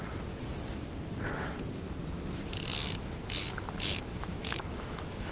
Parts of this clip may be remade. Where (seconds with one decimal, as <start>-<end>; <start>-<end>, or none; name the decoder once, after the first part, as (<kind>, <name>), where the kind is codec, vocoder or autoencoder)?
4.1-5.3 (autoencoder, DAC-VAE)